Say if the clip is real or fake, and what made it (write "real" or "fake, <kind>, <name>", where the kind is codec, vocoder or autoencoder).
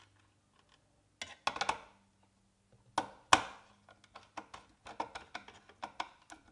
real